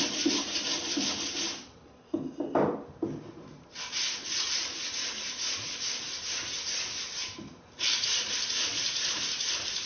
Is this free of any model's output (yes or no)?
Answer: yes